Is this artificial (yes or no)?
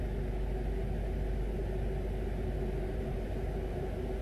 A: no